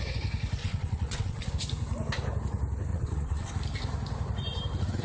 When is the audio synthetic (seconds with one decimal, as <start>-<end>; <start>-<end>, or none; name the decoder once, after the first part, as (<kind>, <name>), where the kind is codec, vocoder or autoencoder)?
0.6-1.5 (vocoder, WaveNeXt); 2.9-3.5